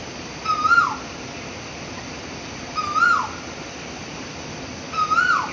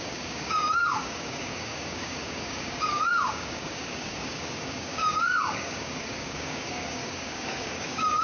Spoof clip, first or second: second